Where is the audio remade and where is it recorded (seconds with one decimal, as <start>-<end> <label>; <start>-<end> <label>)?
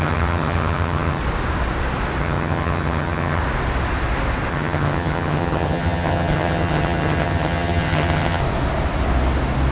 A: 0.0-1.2 remade; 1.2-2.2 recorded; 2.2-3.4 remade; 3.4-4.5 recorded; 4.5-8.4 remade; 8.4-9.7 recorded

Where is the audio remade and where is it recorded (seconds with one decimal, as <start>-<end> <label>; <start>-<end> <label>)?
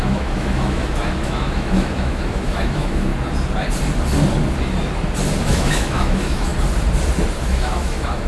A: 0.0-3.1 remade; 3.1-5.4 recorded; 5.4-6.5 remade; 6.5-7.4 recorded; 7.4-8.3 remade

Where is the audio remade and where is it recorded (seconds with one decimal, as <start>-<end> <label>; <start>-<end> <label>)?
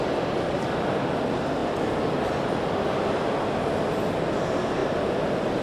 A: 0.0-4.8 recorded; 4.8-5.6 remade